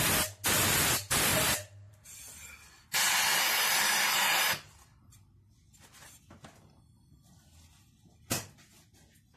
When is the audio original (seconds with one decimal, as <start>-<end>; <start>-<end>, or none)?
0.0-9.4